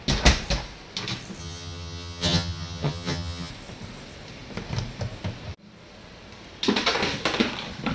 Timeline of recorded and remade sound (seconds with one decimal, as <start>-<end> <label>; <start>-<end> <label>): 0.0-1.4 recorded; 1.4-3.5 remade; 3.5-7.9 recorded